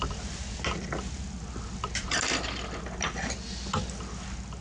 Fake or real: real